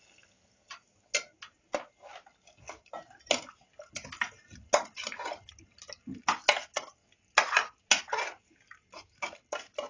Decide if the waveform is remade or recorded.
recorded